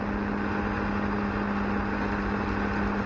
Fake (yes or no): no